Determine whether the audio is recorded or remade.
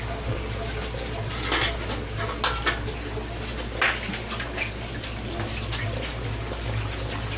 recorded